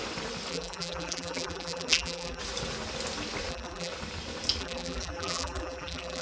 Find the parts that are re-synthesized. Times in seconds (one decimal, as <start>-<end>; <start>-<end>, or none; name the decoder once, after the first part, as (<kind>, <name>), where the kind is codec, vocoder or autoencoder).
0.5-2.4 (vocoder, BigVGAN v2); 3.5-3.9; 4.6-6.2